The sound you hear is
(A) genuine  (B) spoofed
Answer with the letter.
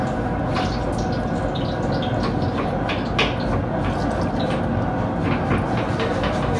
A